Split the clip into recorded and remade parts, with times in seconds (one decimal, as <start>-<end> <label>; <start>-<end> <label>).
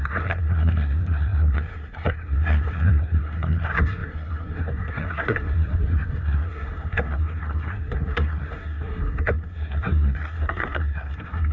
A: 0.0-11.5 remade